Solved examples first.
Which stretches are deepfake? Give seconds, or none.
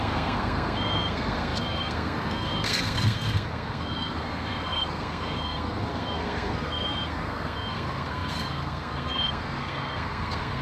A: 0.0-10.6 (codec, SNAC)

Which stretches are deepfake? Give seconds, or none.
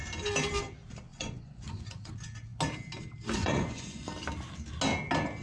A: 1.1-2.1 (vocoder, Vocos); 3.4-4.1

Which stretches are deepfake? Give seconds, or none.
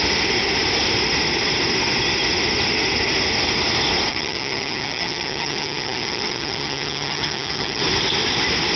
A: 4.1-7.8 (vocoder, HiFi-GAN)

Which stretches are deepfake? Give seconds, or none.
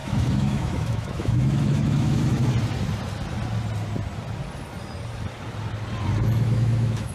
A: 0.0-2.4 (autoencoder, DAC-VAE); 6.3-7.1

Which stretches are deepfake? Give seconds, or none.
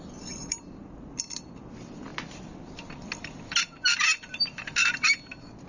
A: 0.0-2.1 (vocoder, BigVGAN v2)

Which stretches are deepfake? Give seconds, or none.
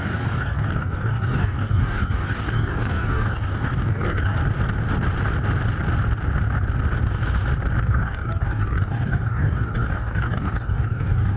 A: 0.0-4.4 (codec, DAC); 7.8-11.4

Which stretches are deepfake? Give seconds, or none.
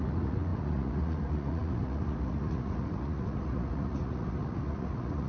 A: 0.0-5.3 (vocoder, Vocos)